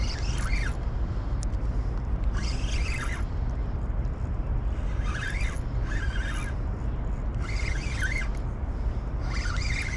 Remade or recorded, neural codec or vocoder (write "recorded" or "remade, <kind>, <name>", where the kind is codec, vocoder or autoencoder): recorded